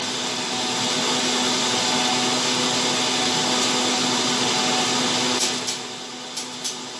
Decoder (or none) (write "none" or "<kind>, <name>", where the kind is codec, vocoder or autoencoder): none